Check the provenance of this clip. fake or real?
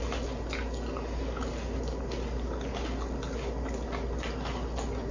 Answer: real